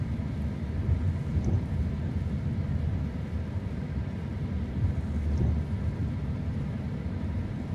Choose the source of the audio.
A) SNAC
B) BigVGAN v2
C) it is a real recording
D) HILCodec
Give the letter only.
B